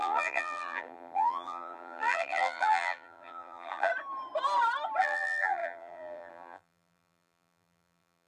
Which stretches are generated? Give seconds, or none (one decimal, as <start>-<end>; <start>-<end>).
0.0-3.9; 5.0-8.3